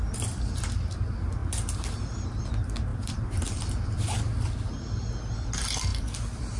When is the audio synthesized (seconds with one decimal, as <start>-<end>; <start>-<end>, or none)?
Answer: 2.9-3.9; 5.9-6.6